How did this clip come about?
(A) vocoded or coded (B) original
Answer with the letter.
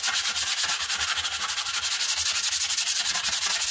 B